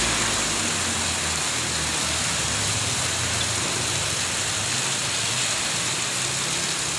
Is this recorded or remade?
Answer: recorded